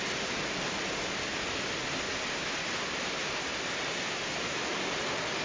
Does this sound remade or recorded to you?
recorded